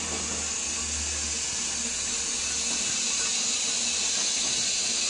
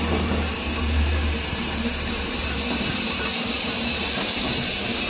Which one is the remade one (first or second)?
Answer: second